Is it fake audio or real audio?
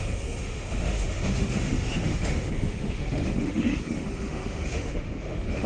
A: fake